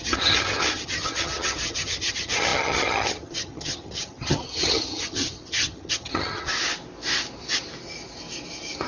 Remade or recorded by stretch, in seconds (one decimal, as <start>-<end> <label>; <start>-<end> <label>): 0.0-6.5 remade; 6.5-8.9 recorded